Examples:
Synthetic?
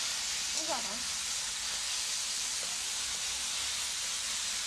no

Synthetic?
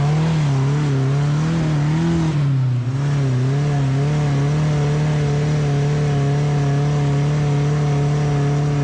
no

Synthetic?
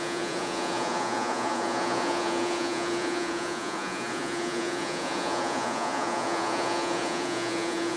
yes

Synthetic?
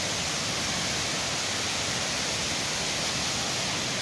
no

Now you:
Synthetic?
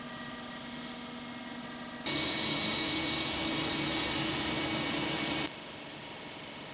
no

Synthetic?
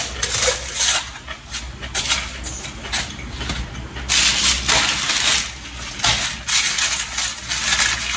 no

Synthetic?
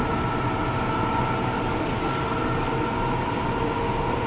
no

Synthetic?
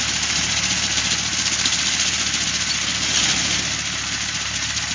no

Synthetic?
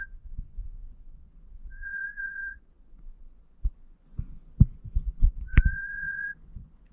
yes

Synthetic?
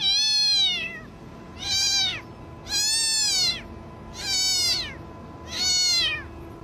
no